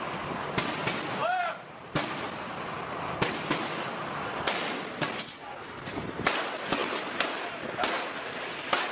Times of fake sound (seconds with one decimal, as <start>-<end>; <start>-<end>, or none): none